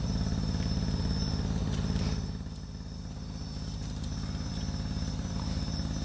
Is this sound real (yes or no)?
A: no